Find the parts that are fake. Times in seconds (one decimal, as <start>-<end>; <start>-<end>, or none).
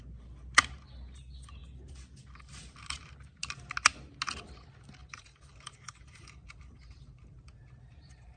5.0-8.4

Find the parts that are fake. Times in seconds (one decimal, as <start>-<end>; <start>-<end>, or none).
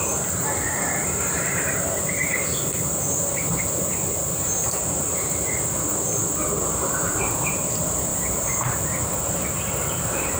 0.0-2.2; 4.8-8.1; 8.9-10.4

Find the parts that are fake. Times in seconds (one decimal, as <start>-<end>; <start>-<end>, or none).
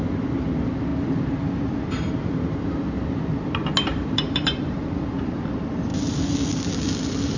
3.9-5.0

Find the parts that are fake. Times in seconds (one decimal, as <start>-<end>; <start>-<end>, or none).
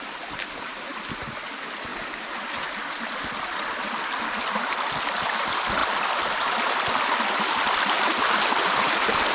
none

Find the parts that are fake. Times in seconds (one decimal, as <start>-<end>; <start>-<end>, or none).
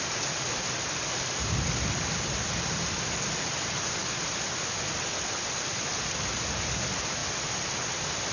7.2-8.3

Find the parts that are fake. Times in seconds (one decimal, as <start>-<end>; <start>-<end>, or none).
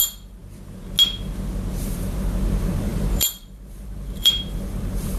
0.0-0.4; 1.8-5.2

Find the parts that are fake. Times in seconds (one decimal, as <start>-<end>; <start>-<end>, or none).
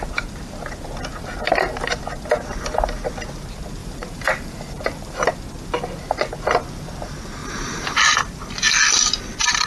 3.8-5.3; 7.4-8.2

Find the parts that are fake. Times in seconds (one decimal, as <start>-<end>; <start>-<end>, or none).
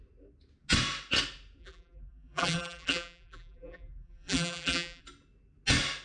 1.6-5.0